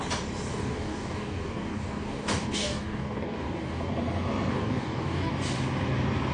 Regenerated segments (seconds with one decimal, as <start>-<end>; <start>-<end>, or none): 0.5-3.9; 4.5-5.3